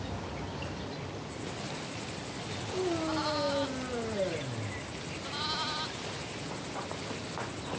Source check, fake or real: real